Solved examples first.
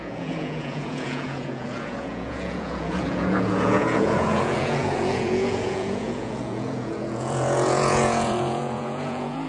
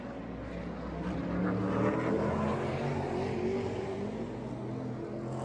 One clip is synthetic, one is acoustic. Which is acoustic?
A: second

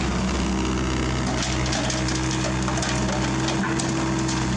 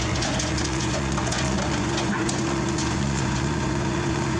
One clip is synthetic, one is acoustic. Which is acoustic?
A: first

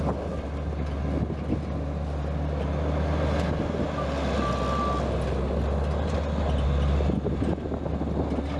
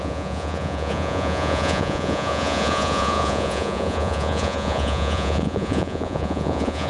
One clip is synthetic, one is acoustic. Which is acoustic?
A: first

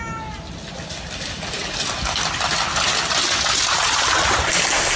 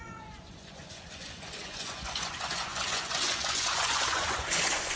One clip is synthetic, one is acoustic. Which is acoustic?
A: first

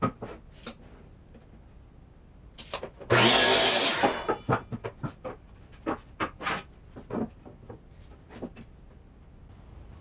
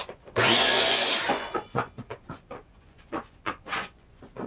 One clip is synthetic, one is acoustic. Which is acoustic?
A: first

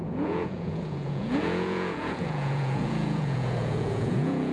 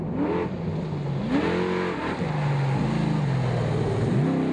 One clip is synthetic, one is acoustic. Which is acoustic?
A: second